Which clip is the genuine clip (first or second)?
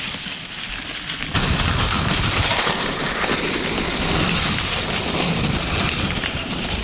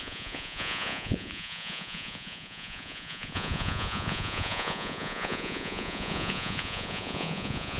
first